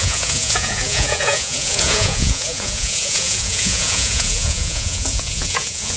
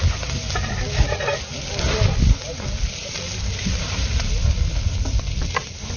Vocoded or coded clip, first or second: first